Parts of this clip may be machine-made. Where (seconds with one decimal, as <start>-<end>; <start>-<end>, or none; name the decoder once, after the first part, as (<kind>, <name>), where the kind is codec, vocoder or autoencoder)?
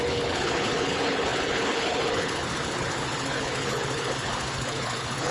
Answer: 0.0-5.3 (codec, HILCodec)